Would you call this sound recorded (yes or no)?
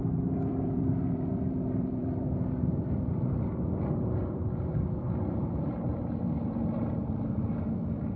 no